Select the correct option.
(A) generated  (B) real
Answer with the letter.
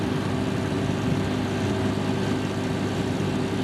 B